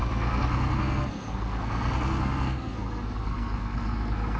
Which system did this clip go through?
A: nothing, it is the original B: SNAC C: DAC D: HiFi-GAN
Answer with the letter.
B